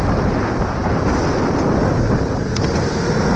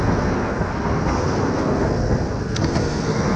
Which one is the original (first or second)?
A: first